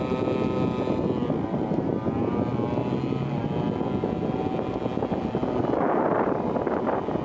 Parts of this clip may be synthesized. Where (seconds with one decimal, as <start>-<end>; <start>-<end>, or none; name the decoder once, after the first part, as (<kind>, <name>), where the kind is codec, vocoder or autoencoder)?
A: none